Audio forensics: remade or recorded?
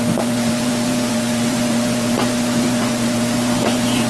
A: remade